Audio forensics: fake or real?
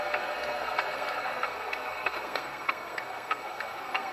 fake